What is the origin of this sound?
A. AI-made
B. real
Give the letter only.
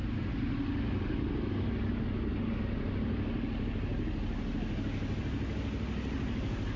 B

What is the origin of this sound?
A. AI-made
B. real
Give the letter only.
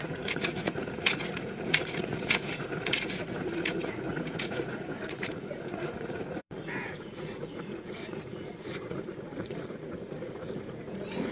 A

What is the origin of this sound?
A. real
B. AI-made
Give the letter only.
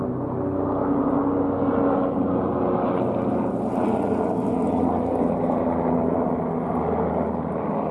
A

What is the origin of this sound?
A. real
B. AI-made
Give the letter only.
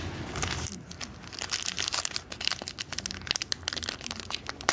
A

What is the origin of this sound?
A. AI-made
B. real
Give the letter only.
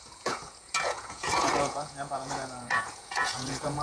A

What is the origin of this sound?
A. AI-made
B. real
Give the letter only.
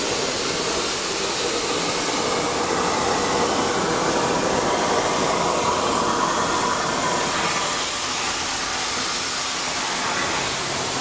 B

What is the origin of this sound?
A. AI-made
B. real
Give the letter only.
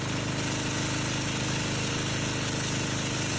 B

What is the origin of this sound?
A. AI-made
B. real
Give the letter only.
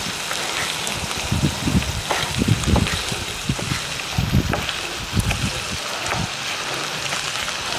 B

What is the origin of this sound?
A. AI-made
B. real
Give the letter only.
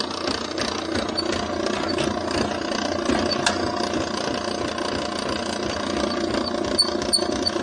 B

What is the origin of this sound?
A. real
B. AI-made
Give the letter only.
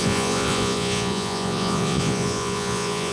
B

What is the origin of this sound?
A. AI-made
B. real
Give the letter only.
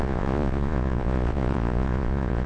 A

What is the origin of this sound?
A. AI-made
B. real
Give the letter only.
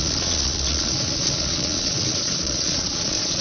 A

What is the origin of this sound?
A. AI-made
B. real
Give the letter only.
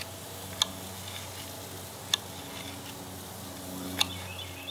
B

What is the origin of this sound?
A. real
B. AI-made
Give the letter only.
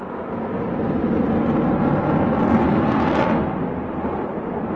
A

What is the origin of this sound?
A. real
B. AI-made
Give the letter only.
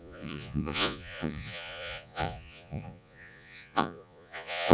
B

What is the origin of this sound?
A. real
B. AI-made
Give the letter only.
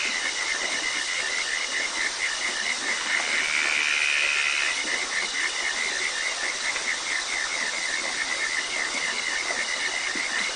A